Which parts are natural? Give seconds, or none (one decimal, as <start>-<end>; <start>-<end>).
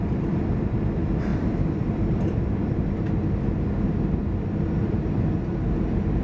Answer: 0.0-1.3; 5.0-6.2